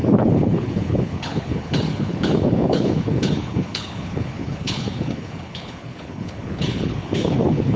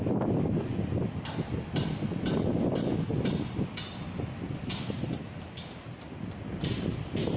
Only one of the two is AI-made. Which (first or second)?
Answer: first